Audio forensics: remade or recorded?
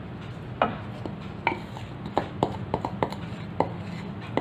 recorded